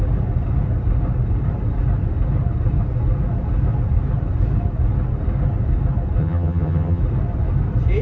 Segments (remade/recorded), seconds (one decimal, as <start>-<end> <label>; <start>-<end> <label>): 0.0-6.2 recorded; 6.2-7.0 remade; 7.0-8.0 recorded